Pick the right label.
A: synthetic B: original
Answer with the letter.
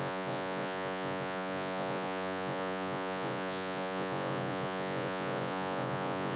A